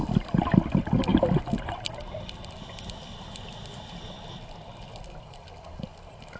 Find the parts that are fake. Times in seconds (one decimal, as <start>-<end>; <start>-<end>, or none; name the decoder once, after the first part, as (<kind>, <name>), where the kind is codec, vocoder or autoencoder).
none